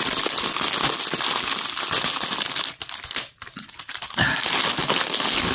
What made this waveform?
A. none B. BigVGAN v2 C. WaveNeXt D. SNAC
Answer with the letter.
A